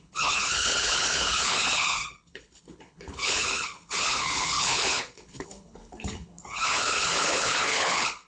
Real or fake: fake